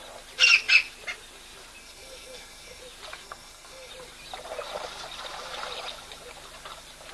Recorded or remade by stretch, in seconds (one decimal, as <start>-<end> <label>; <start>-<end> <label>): 0.0-1.8 recorded; 1.8-2.8 remade; 2.8-3.2 recorded; 3.2-3.9 remade; 3.9-7.1 recorded